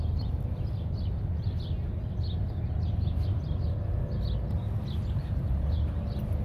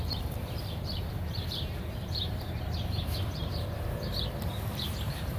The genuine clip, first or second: first